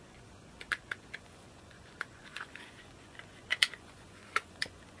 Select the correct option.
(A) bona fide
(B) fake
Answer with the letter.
B